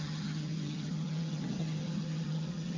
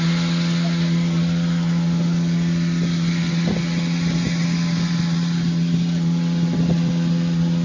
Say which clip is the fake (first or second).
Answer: first